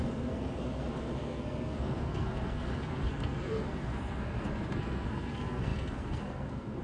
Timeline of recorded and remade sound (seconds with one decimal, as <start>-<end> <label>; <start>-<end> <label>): 0.0-6.8 remade